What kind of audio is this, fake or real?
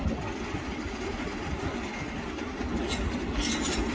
real